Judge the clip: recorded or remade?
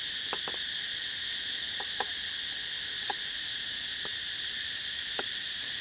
recorded